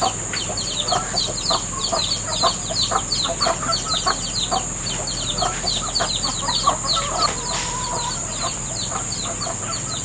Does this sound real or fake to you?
real